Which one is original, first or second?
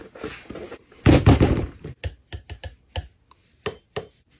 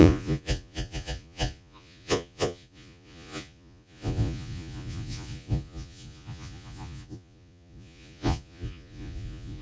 first